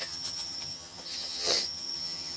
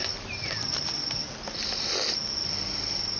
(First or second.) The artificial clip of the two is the first